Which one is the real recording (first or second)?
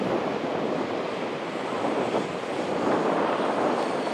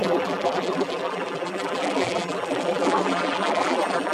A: first